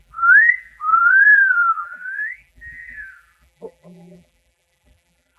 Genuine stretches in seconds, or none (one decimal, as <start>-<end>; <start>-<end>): none